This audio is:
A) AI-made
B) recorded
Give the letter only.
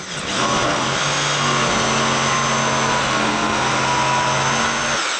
B